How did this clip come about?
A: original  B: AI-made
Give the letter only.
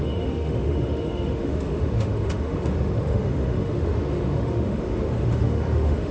B